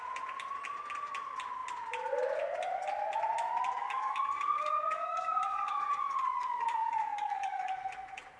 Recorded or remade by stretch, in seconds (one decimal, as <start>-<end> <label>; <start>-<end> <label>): 0.0-3.8 recorded; 3.8-7.7 remade; 7.7-8.4 recorded